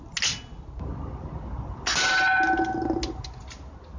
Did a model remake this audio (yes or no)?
no